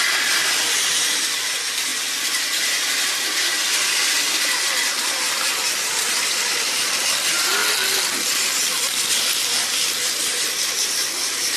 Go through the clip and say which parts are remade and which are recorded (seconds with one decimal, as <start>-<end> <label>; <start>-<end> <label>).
0.0-7.6 remade; 7.6-9.1 recorded; 9.1-11.6 remade